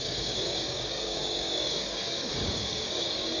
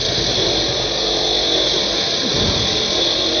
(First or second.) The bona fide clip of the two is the second